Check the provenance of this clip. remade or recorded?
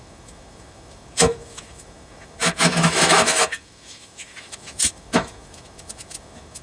remade